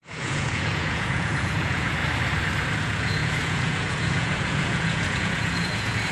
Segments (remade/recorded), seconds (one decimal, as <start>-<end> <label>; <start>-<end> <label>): 0.0-2.0 remade; 2.0-2.8 recorded; 2.8-6.1 remade